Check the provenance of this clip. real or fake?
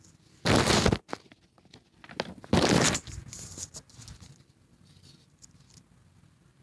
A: real